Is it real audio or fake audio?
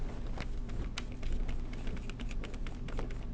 real